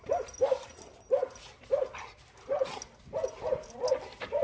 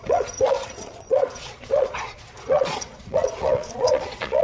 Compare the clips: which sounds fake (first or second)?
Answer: second